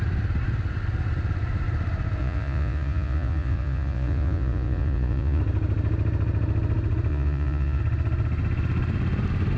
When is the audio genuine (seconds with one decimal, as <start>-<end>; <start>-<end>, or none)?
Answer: 0.0-2.2; 5.4-7.1; 7.8-9.6